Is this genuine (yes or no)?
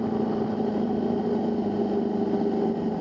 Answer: yes